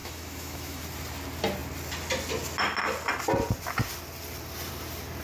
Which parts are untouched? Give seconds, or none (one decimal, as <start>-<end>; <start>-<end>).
0.8-5.2